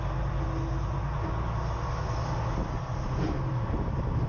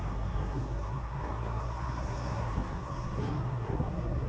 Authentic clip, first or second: first